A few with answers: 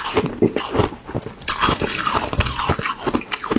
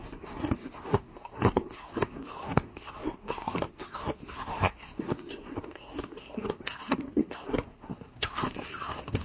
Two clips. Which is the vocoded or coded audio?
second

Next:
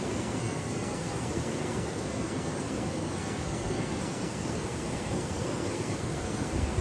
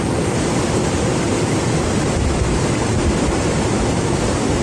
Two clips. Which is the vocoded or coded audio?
first